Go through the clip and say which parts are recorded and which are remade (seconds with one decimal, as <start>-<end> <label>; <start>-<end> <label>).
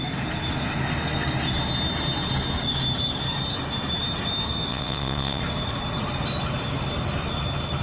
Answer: 0.0-4.7 recorded; 4.7-5.4 remade; 5.4-7.8 recorded